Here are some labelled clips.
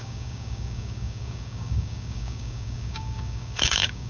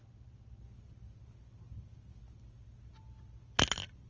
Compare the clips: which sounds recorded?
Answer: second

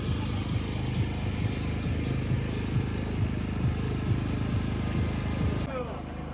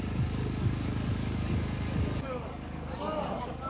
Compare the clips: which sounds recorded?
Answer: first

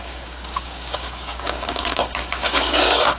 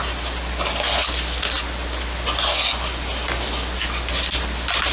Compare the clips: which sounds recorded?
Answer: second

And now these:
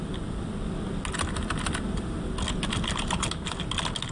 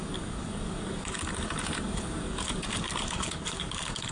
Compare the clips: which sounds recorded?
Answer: first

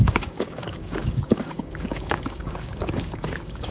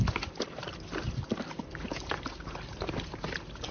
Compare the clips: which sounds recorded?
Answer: second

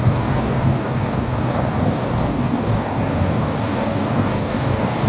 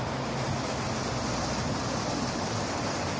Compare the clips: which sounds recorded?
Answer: second